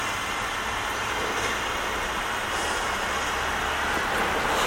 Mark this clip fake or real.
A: real